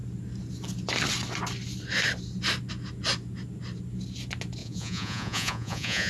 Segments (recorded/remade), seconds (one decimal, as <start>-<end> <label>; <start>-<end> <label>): 0.0-4.6 recorded; 4.6-6.1 remade